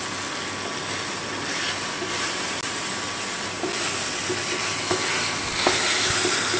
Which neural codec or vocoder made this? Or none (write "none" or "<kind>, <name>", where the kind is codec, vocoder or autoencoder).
none